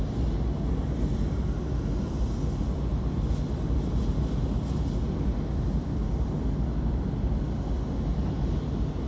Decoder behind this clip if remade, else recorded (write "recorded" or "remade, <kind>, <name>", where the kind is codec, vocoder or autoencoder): recorded